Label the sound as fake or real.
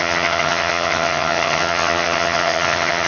fake